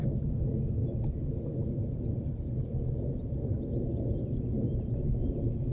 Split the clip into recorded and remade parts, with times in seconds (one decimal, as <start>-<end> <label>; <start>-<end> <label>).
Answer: 0.0-5.7 recorded